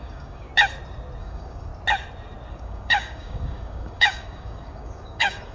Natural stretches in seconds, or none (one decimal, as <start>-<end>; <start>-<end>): 0.5-1.2; 1.7-2.5